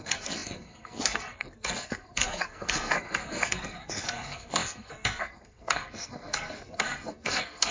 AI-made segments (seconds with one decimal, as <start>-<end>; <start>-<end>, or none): 0.0-7.7